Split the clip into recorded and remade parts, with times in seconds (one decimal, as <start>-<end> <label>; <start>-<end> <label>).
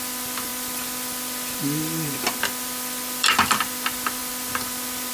0.0-5.1 recorded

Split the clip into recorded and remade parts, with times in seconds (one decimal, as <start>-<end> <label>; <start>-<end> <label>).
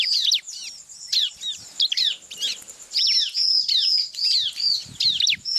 0.0-5.6 recorded